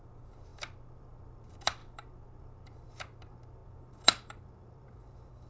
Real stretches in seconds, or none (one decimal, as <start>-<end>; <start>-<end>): none